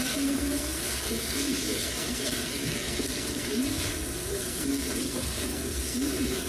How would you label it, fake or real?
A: fake